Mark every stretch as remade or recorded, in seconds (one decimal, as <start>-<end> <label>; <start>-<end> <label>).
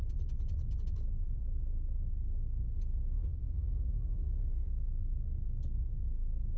0.0-3.3 recorded; 3.3-4.5 remade; 4.5-6.6 recorded